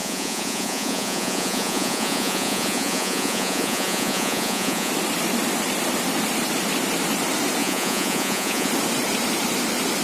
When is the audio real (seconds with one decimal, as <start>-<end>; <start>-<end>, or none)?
4.9-7.6; 8.7-10.0